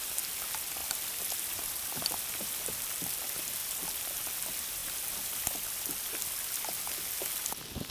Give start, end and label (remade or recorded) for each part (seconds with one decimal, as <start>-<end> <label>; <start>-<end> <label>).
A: 0.0-0.8 recorded; 0.8-2.9 remade; 2.9-3.6 recorded; 3.6-4.1 remade; 4.1-4.8 recorded; 4.8-6.3 remade; 6.3-7.9 recorded